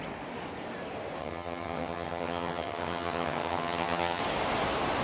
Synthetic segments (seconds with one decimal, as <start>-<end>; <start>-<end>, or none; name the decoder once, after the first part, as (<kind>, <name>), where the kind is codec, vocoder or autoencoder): 1.2-4.2 (vocoder, HiFi-GAN)